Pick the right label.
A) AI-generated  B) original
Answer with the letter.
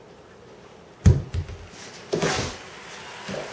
B